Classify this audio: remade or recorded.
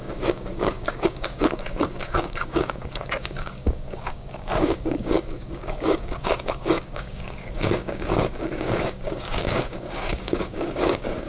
remade